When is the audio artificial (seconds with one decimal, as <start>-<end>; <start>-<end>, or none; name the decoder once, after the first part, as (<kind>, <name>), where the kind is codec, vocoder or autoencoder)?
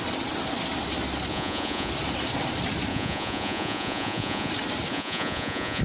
1.3-1.9 (vocoder, Vocos); 2.9-4.5; 4.9-5.8